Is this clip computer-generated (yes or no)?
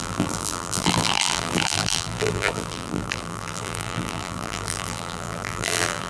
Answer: yes